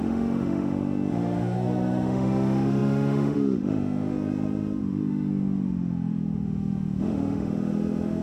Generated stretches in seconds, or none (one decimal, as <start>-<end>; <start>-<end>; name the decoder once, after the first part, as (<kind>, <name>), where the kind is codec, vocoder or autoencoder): 0.0-8.2 (autoencoder, DAC-VAE)